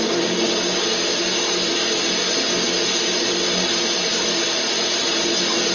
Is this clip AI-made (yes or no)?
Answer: no